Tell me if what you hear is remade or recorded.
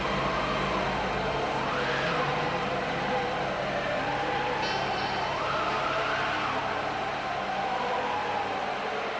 recorded